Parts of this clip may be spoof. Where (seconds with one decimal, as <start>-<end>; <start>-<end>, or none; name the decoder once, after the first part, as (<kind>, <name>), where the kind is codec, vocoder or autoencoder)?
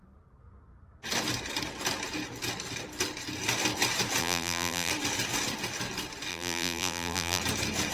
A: 4.2-4.9 (vocoder, BigVGAN v2); 6.3-7.4